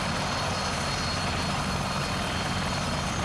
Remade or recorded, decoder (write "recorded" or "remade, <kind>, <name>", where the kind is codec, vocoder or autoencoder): recorded